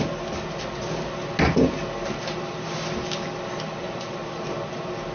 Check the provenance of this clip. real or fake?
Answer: real